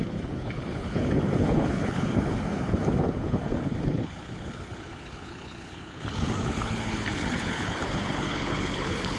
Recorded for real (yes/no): no